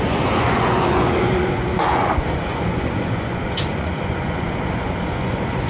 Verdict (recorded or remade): remade